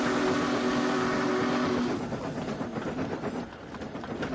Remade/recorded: recorded